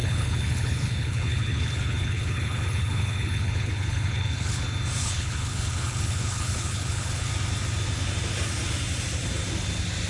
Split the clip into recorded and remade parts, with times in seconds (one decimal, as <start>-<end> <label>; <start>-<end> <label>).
0.0-4.6 remade; 4.6-5.0 recorded; 5.0-7.3 remade; 7.3-10.1 recorded